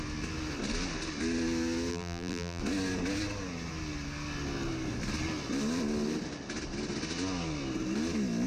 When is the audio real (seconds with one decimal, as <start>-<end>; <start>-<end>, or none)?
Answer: 0.0-1.9; 2.6-8.5